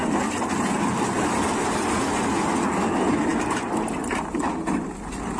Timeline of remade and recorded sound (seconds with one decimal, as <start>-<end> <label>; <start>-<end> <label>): 0.0-5.4 recorded